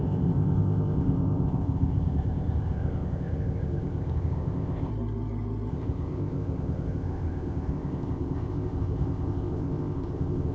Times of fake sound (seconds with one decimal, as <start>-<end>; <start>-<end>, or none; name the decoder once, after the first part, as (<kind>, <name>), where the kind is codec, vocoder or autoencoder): 0.0-4.9 (codec, ZipCodec); 5.7-10.5

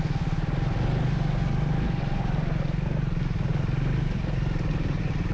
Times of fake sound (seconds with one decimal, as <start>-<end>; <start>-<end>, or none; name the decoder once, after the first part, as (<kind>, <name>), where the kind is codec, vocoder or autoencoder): none